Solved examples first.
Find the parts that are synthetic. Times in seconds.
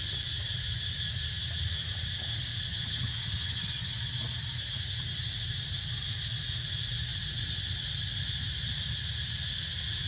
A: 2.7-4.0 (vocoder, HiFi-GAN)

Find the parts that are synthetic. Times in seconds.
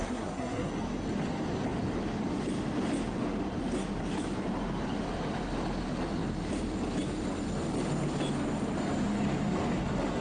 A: 0.0-0.7 (codec, SNAC)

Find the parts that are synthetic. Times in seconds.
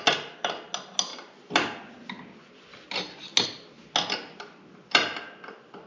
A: none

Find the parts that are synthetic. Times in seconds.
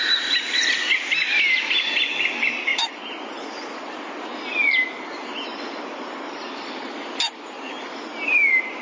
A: none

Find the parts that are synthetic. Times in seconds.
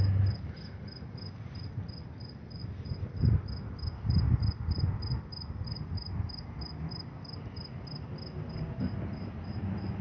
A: none